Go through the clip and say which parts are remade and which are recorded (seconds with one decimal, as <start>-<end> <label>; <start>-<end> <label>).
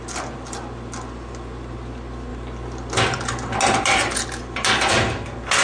0.0-5.6 recorded